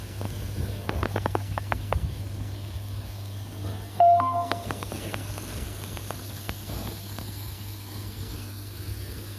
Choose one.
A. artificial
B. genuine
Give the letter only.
A